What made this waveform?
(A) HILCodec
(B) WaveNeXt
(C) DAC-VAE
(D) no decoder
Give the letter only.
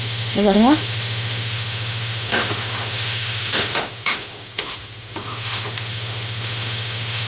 C